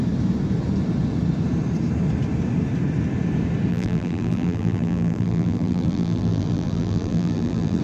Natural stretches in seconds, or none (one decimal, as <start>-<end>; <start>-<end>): 0.0-3.7